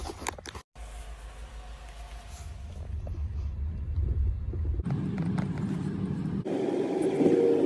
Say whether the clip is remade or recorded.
recorded